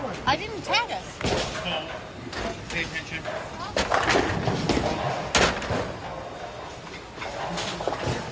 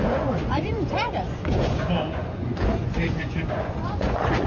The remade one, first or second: second